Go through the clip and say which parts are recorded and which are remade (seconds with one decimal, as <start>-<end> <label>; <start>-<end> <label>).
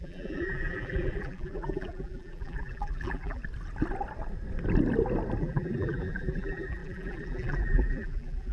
0.0-3.4 remade; 3.4-5.4 recorded; 5.4-8.5 remade